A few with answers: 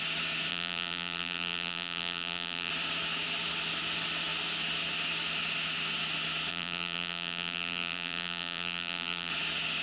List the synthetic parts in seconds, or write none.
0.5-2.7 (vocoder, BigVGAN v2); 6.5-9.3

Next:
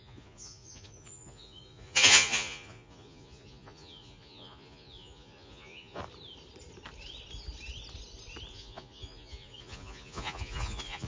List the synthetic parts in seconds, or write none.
0.0-6.0 (vocoder, Vocos); 8.5-11.1

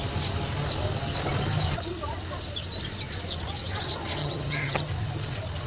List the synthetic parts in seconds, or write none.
4.2-4.9 (vocoder, HiFi-GAN)

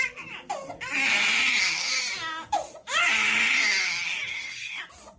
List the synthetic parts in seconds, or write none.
4.3-4.8 (codec, SNAC)

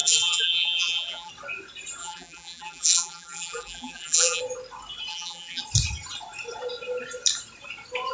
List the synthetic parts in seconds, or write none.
0.0-1.3 (vocoder, BigVGAN v2); 2.0-4.4; 5.1-5.6

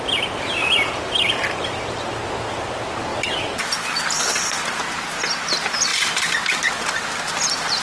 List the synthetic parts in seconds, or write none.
3.1-4.8 (vocoder, BigVGAN v2); 5.9-7.8

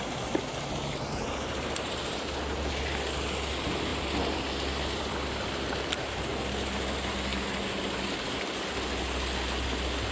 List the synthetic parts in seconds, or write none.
3.9-6.2 (vocoder, BigVGAN v2)

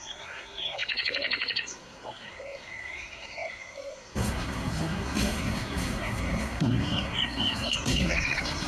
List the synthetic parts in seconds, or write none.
0.0-8.7 (codec, SNAC)